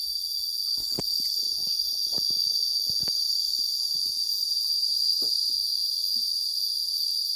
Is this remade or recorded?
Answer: recorded